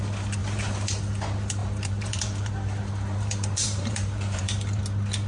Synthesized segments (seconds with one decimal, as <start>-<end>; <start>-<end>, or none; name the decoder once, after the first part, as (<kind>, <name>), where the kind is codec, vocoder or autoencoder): 0.4-1.0 (vocoder, BigVGAN v2); 1.6-4.8